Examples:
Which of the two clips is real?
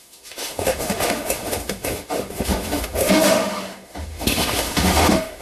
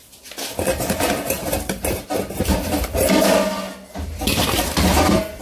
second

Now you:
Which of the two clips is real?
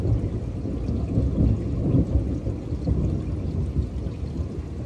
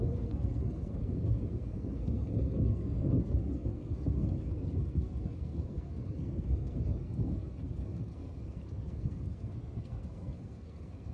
first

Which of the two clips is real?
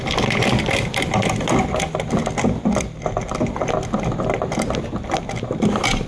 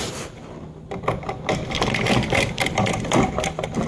first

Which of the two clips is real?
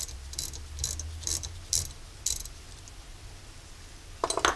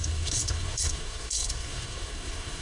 first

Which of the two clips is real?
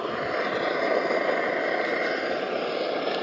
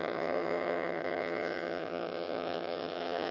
first